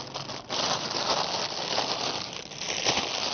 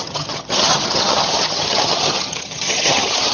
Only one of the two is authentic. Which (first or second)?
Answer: first